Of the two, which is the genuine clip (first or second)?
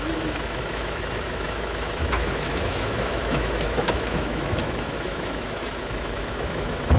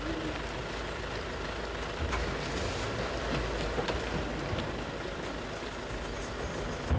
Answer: second